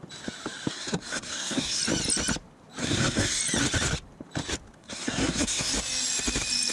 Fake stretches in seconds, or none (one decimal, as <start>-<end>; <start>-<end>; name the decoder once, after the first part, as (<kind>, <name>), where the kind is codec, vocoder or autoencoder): 0.7-1.8 (codec, SNAC); 2.8-3.4; 4.8-5.7